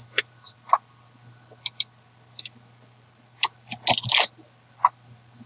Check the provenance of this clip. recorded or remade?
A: recorded